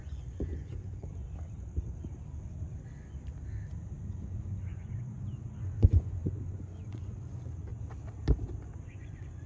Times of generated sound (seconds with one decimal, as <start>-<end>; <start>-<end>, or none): 0.0-1.1; 4.0-7.7; 8.9-9.5